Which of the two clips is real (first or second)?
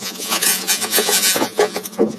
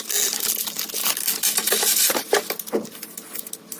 second